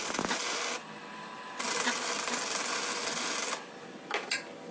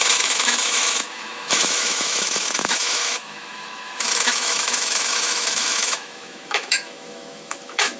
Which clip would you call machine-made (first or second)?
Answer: second